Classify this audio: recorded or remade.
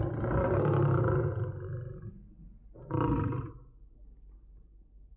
recorded